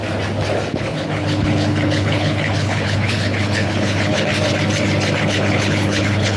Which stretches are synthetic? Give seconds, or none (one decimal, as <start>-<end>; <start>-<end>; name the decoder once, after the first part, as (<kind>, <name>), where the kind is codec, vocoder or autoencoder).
0.7-4.3 (codec, HILCodec); 5.2-6.4